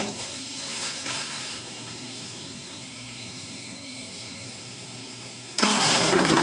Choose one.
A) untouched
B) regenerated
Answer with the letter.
B